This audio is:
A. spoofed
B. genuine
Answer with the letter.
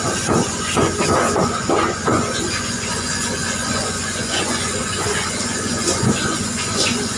A